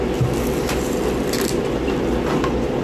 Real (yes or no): yes